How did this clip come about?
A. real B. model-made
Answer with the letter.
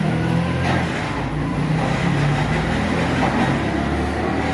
A